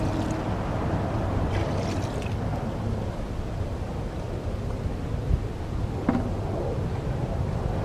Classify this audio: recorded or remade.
recorded